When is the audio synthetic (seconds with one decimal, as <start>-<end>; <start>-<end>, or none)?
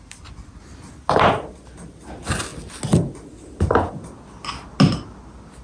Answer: none